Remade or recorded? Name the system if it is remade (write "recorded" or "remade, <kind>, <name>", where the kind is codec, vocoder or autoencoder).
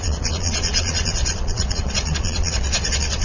remade, vocoder, Vocos